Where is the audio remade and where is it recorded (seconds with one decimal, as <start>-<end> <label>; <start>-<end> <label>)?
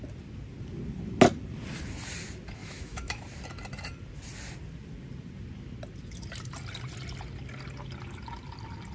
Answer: 0.0-2.6 recorded; 2.6-3.2 remade; 3.2-8.9 recorded